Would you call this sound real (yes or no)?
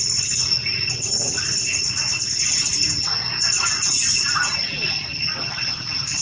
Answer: yes